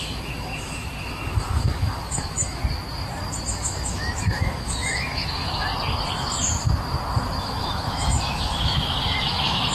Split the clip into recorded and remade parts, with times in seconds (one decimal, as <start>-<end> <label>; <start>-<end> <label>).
0.0-2.6 remade; 2.6-3.5 recorded; 3.5-5.7 remade; 5.7-7.4 recorded; 7.4-9.7 remade